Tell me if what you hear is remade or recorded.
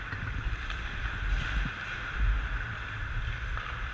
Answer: recorded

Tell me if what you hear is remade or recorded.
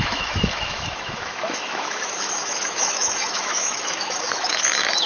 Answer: remade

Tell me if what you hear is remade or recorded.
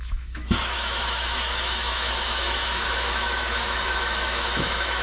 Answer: remade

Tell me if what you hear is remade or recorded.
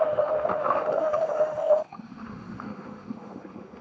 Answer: remade